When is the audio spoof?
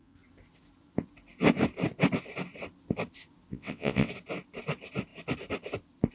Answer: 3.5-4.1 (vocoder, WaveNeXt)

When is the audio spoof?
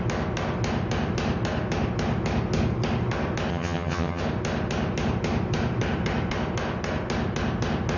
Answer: 3.5-4.2 (vocoder, HiFi-GAN)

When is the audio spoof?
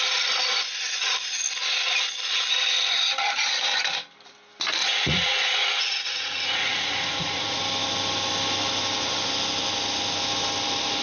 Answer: 4.8-7.6 (vocoder, Vocos)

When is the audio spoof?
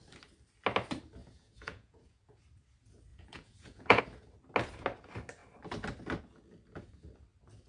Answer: 1.2-2.4 (vocoder, Vocos); 3.1-4.0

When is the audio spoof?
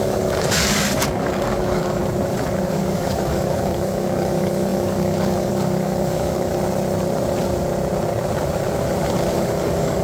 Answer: 0.0-2.0 (codec, DAC); 2.7-6.5; 9.3-10.0